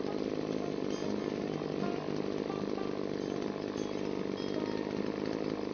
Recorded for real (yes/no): yes